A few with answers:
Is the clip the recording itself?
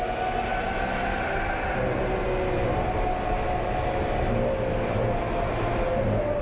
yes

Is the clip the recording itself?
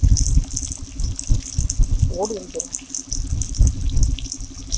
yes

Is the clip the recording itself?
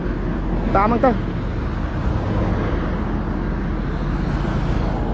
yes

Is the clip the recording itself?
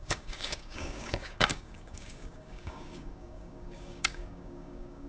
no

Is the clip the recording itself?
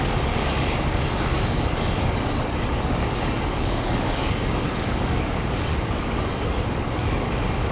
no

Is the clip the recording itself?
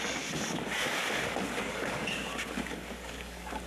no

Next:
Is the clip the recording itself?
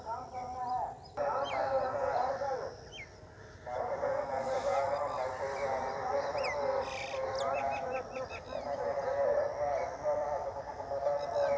yes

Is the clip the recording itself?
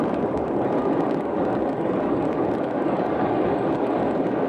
no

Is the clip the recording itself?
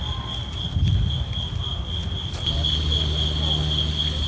yes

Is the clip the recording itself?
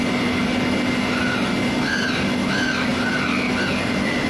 yes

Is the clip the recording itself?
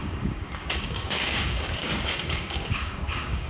no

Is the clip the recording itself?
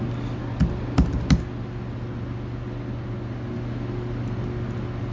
yes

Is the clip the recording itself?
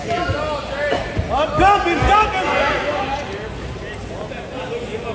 yes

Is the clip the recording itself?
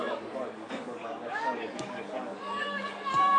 no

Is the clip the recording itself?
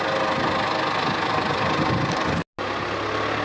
yes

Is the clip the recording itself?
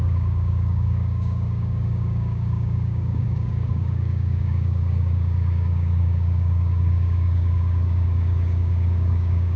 no